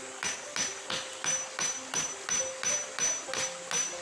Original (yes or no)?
yes